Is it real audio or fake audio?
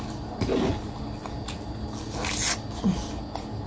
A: real